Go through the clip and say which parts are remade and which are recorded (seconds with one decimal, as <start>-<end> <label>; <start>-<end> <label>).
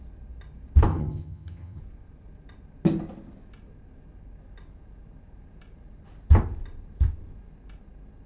0.0-0.9 recorded; 0.9-1.8 remade; 1.8-8.3 recorded